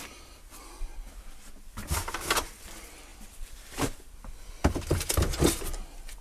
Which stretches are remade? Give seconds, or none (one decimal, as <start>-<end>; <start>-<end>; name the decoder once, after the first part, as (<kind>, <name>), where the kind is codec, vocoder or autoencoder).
3.1-4.6 (vocoder, BigVGAN v2)